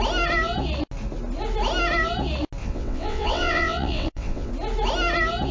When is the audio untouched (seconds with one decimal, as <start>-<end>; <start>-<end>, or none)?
0.0-2.6; 4.5-5.5

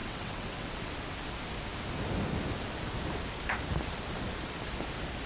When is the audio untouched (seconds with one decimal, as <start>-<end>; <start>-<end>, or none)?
0.9-5.3

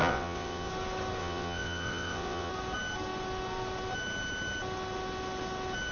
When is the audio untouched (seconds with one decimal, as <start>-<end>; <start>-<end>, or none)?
0.7-1.2; 2.5-5.9